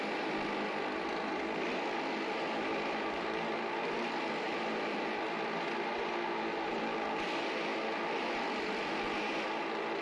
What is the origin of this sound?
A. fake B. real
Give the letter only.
B